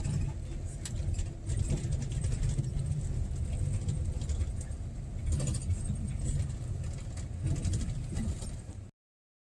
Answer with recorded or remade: recorded